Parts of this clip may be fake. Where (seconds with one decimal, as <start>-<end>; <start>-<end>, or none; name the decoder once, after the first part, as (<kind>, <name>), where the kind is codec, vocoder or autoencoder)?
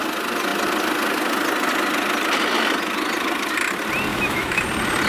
4.1-4.6 (autoencoder, DAC-VAE)